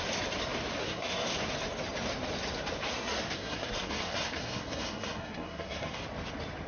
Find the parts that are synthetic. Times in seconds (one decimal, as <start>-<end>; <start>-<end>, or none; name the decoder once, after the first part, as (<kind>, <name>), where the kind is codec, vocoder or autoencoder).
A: 0.8-1.3 (codec, SNAC); 2.9-6.0